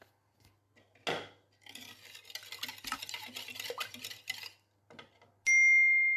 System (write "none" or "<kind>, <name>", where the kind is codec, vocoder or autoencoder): none